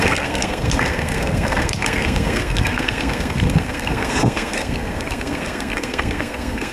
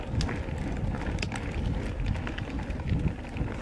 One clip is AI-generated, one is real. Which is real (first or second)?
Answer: second